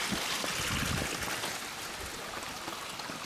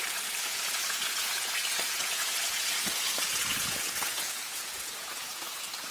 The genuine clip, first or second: first